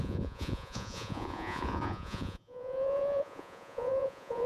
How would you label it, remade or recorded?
remade